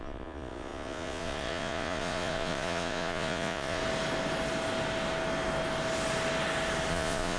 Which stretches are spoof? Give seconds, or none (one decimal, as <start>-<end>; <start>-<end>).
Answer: 0.0-3.8; 6.9-7.4